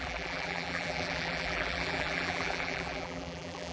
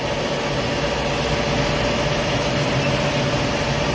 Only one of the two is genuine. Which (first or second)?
second